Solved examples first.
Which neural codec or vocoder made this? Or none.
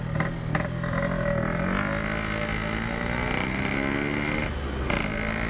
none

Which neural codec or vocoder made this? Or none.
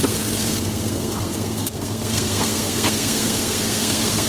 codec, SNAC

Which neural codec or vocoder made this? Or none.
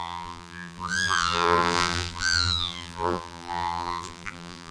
vocoder, BigVGAN v2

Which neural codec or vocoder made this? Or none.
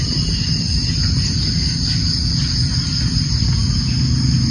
none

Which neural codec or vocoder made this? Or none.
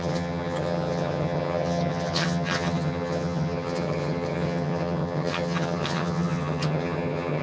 vocoder, HiFi-GAN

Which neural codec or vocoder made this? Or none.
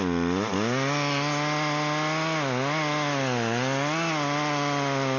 none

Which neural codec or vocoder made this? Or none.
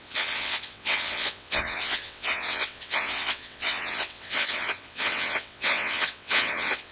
vocoder, WaveNeXt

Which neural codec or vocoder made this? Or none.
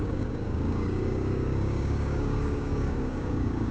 codec, DAC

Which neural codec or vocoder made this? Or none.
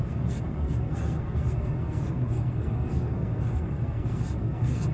codec, SNAC